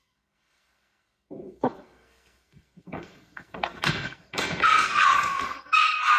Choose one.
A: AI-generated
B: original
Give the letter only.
A